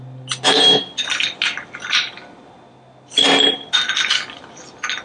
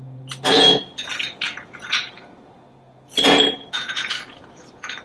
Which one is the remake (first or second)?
second